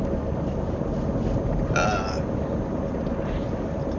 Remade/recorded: recorded